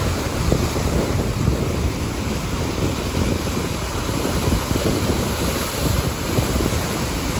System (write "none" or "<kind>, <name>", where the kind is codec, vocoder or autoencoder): vocoder, BigVGAN v2